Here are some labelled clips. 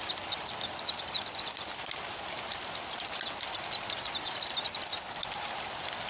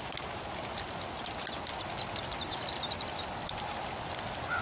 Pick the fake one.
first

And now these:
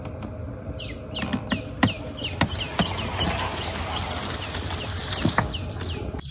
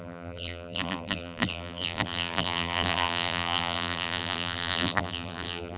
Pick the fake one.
second